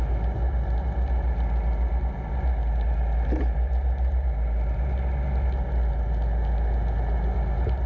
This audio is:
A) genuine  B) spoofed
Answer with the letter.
A